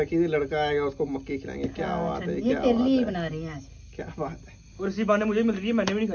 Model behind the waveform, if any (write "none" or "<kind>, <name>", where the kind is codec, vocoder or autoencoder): none